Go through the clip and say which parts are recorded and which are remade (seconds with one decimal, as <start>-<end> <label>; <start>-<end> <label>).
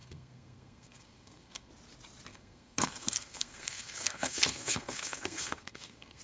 0.0-1.7 remade; 1.7-2.3 recorded; 2.3-6.2 remade